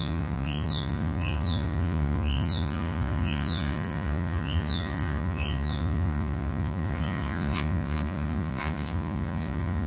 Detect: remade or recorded remade